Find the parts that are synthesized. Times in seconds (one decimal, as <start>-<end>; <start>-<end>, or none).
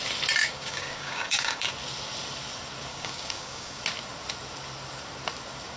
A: 0.4-1.7; 2.9-3.8